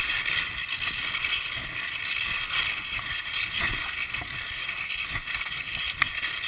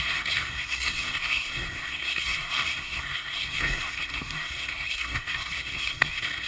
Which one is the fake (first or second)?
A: second